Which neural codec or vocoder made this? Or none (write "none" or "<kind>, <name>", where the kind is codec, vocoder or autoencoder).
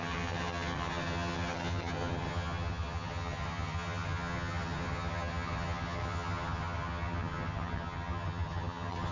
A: vocoder, HiFi-GAN